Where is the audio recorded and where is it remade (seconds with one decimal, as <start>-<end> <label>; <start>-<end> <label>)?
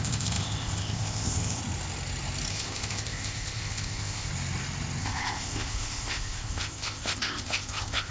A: 0.0-1.6 remade; 1.6-2.5 recorded; 2.5-4.3 remade; 4.3-5.0 recorded; 5.0-8.1 remade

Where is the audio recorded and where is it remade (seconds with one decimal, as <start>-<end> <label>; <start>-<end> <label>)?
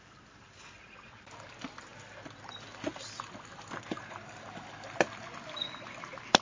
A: 0.0-6.4 recorded